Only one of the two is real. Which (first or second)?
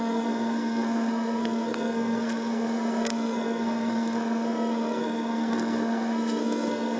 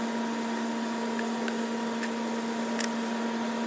second